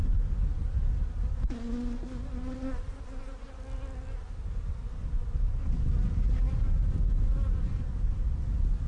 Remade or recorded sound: recorded